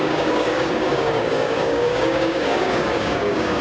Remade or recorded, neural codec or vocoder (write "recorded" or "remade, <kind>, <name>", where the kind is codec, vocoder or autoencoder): remade, codec, DAC